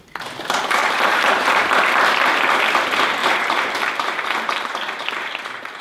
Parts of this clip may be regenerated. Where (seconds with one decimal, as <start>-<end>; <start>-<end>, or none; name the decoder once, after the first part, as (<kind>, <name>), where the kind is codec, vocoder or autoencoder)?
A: 0.8-1.7 (vocoder, BigVGAN v2); 3.2-5.8